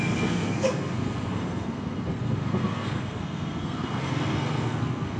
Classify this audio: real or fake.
fake